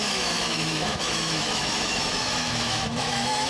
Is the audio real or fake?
fake